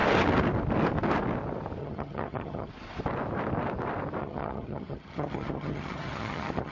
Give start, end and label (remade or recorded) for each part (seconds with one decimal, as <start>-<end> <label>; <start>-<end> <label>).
0.0-1.8 recorded; 1.8-2.7 remade; 2.7-4.2 recorded; 4.2-6.7 remade